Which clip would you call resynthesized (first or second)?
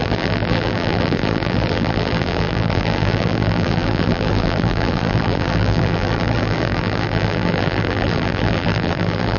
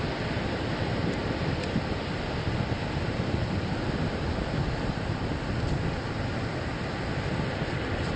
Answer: first